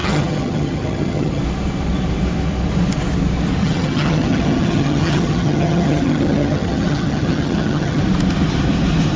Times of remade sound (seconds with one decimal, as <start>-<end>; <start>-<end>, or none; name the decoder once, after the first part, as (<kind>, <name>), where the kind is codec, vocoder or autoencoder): 0.0-1.4 (vocoder, HiFi-GAN); 3.6-8.0